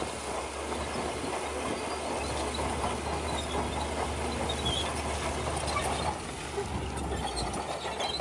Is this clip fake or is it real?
real